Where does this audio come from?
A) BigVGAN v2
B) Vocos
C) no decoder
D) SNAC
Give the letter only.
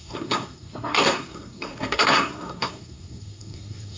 D